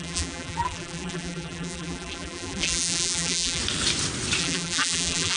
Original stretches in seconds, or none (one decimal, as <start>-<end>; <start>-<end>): 3.6-4.4